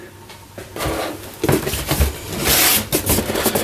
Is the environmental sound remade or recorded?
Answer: recorded